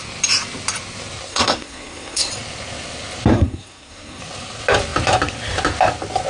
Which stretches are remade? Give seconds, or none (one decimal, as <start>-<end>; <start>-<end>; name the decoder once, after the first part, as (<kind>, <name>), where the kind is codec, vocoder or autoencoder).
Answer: 1.3-2.3 (codec, SNAC); 3.3-4.2